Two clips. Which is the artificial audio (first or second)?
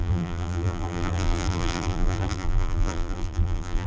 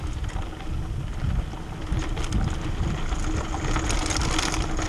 first